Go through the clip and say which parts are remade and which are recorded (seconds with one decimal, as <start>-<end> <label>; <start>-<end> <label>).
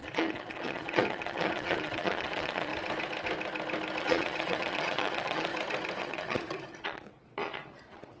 0.0-2.7 remade; 2.7-4.0 recorded; 4.0-5.5 remade; 5.5-6.0 recorded; 6.0-8.2 remade